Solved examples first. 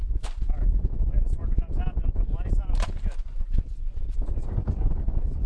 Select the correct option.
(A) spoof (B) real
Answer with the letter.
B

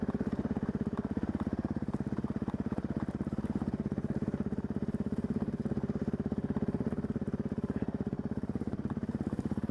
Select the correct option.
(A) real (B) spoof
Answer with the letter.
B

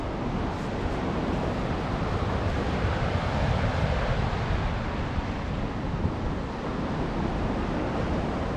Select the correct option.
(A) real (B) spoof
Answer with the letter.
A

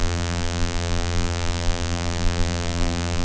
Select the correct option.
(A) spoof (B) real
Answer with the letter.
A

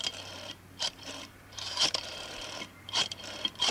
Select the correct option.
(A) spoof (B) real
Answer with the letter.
A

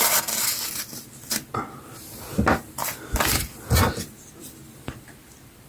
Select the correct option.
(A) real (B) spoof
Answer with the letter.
A